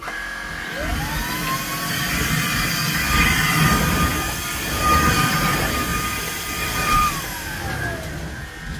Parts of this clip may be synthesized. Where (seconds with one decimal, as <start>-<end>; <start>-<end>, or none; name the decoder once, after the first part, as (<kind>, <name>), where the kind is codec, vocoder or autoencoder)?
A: 5.9-6.9 (vocoder, BigVGAN v2)